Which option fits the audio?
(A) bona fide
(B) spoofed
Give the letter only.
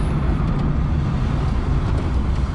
A